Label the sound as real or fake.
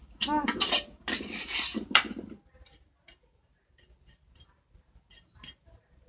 fake